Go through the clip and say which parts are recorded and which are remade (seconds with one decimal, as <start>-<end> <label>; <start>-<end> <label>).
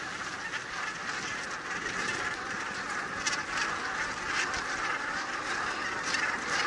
0.0-6.7 recorded